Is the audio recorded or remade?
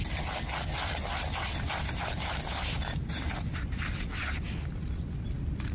recorded